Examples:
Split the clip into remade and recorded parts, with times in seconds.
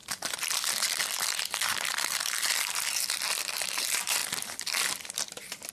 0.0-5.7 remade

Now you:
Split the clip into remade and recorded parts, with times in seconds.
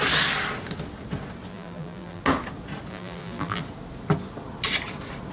0.0-1.5 recorded; 1.5-2.2 remade; 2.2-2.9 recorded; 2.9-3.6 remade; 3.6-5.3 recorded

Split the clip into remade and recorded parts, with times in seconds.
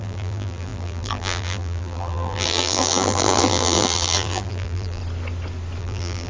0.0-5.0 remade; 5.0-5.8 recorded; 5.8-6.3 remade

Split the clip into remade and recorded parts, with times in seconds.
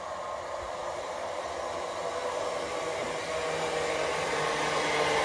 0.0-0.8 recorded; 0.8-1.5 remade; 1.5-5.2 recorded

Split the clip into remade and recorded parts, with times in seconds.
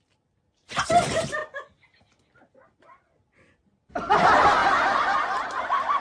0.0-6.0 recorded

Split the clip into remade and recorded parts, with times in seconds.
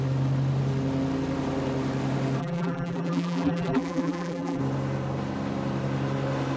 0.0-2.4 recorded; 2.4-4.6 remade; 4.6-6.6 recorded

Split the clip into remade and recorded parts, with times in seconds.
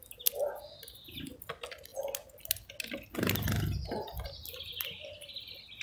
0.0-5.8 recorded